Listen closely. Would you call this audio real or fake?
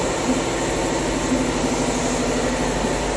real